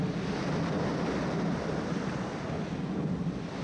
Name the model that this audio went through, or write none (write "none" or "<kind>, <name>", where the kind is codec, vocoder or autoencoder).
none